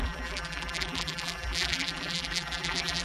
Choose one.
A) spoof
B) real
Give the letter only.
A